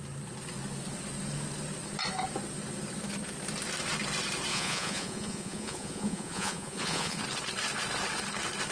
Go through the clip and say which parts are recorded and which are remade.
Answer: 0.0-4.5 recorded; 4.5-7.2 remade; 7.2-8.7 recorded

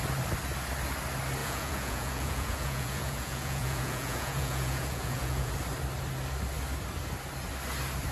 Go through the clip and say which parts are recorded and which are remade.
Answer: 0.0-1.4 recorded; 1.4-5.5 remade; 5.5-8.1 recorded

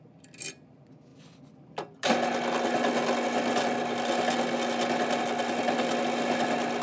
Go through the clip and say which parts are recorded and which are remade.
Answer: 0.0-6.8 recorded

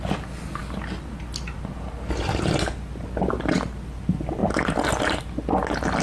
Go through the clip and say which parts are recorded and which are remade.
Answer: 0.0-6.0 recorded

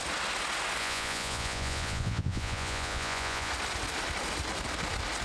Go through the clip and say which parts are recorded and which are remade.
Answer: 0.0-0.8 recorded; 0.8-3.5 remade; 3.5-5.2 recorded

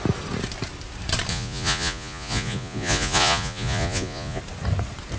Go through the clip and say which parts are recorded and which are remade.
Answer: 0.0-1.3 recorded; 1.3-4.4 remade; 4.4-5.2 recorded

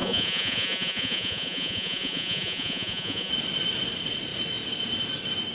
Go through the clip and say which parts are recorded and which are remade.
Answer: 0.0-3.3 remade; 3.3-5.5 recorded

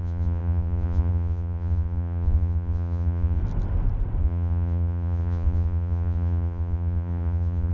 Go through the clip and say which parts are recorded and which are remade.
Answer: 0.0-3.4 remade; 3.4-4.2 recorded; 4.2-7.7 remade